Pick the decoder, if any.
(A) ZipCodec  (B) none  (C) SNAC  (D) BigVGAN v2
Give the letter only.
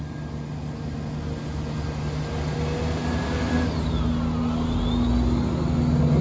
B